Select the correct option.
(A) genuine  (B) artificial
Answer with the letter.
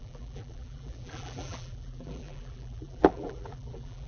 B